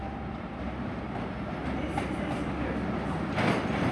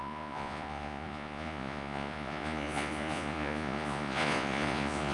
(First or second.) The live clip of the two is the first